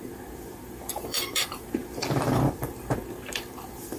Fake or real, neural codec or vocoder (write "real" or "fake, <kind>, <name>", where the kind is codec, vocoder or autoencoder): fake, vocoder, BigVGAN v2